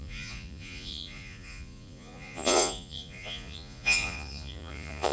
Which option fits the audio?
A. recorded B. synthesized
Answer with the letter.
B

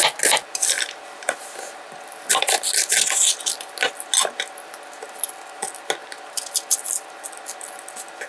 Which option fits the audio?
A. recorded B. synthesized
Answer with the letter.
A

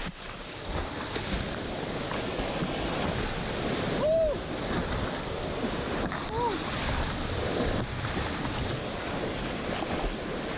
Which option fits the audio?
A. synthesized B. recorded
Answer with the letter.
B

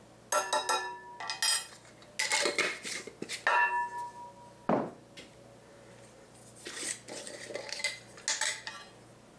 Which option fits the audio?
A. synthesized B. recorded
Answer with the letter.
B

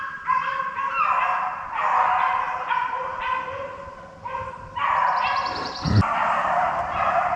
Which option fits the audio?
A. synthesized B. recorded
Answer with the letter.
B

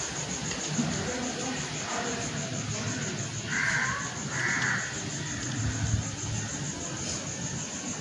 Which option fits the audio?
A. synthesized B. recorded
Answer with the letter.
B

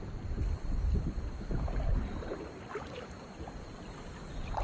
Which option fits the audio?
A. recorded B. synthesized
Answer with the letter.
A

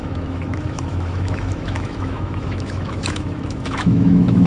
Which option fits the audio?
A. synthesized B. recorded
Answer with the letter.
A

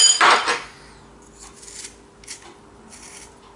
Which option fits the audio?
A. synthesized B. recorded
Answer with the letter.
B